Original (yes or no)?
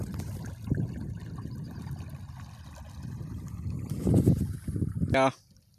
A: yes